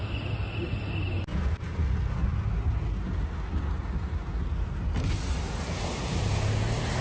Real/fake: real